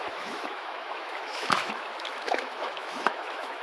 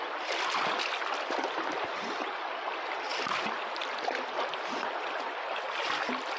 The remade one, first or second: first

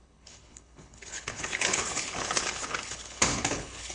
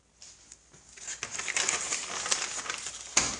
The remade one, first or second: first